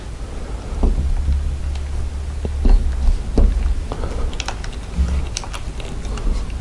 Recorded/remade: recorded